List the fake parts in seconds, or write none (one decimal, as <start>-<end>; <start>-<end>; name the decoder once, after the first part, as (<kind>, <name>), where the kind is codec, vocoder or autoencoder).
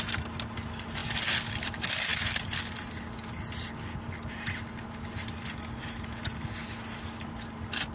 none